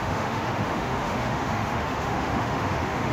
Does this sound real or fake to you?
fake